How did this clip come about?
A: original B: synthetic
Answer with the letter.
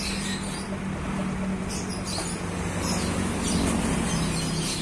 A